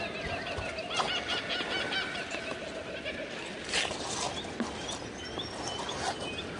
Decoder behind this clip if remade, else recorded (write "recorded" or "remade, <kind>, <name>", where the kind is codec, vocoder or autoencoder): recorded